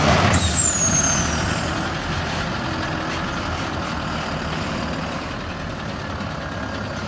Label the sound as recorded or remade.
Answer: recorded